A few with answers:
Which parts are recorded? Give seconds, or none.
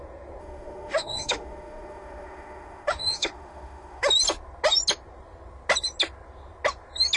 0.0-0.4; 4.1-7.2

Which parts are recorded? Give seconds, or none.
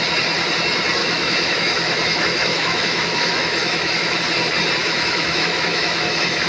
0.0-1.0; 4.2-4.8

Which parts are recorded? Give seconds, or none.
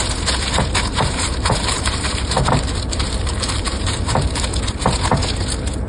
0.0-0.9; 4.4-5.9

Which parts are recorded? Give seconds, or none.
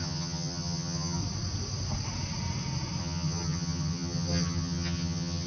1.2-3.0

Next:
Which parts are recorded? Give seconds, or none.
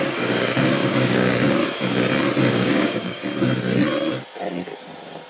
1.6-2.5; 3.2-5.3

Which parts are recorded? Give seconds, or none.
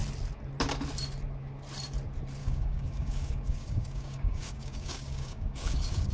0.0-2.4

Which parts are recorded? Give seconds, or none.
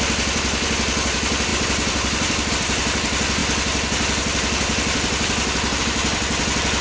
none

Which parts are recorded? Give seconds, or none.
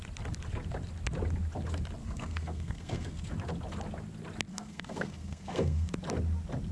0.0-2.0; 3.3-4.5; 5.9-6.7